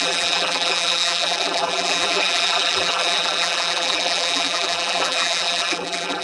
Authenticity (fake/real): fake